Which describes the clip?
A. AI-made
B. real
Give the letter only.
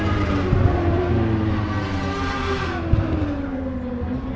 B